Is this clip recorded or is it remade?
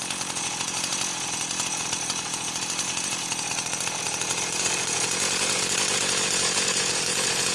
remade